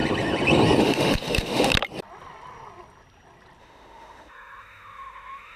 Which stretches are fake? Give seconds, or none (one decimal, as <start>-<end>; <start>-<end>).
0.8-1.7; 3.6-5.6